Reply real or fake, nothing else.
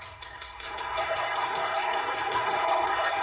fake